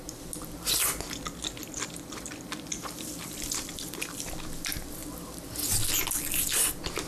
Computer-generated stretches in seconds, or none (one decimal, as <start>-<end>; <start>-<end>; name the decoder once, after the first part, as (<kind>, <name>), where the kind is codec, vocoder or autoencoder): 1.6-4.3 (vocoder, BigVGAN v2)